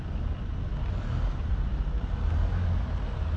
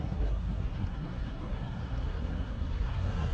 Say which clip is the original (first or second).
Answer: first